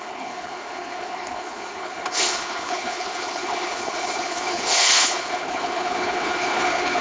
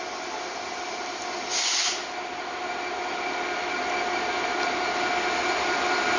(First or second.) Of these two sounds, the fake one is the first